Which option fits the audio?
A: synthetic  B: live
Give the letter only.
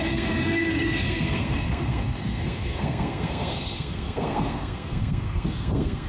A